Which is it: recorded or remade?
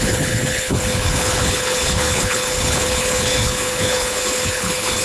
remade